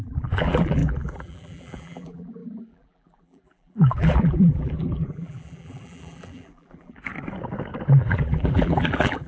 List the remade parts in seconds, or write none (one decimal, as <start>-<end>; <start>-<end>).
0.0-7.1; 8.0-9.3